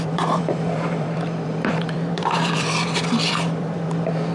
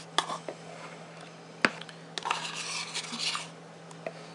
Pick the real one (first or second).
second